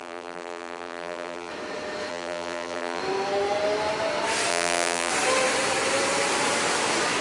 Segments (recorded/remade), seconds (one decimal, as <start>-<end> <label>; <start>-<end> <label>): 0.0-1.5 remade; 1.5-2.1 recorded; 2.1-3.0 remade; 3.0-4.5 recorded; 4.5-5.1 remade; 5.1-7.2 recorded